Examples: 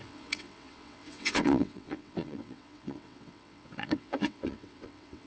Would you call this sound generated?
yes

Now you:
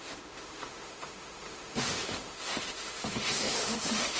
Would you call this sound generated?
yes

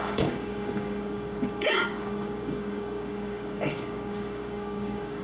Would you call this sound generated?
yes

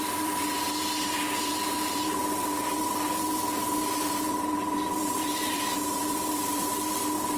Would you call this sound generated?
yes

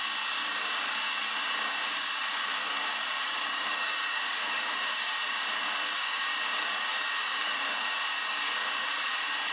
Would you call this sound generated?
yes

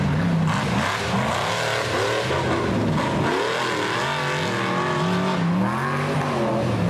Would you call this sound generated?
no